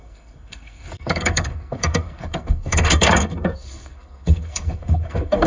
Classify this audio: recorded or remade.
remade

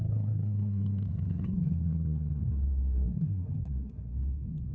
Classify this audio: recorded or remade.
remade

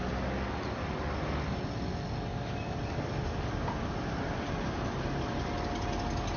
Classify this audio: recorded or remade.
recorded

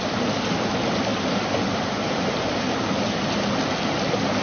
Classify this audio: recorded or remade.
recorded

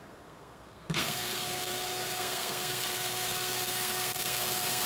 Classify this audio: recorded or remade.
remade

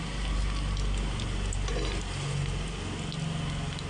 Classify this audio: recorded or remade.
recorded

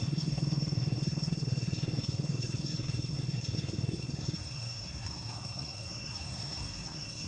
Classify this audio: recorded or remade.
remade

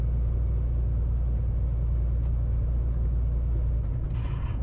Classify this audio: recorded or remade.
recorded